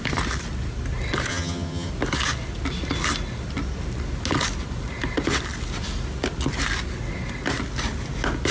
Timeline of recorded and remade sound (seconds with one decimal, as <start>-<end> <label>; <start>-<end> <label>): 0.0-1.3 recorded; 1.3-1.9 remade; 1.9-8.5 recorded